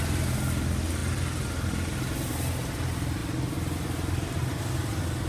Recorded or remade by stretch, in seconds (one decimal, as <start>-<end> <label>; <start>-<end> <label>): 0.0-5.3 recorded